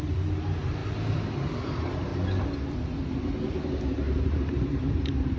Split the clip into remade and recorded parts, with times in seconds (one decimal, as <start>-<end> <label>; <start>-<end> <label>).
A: 0.0-0.8 remade; 0.8-1.7 recorded; 1.7-2.1 remade; 2.1-3.5 recorded; 3.5-5.4 remade